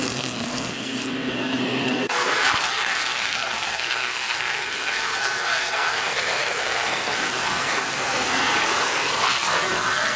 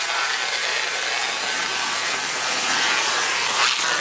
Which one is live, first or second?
second